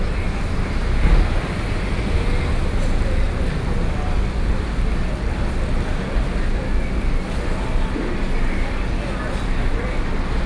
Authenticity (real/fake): real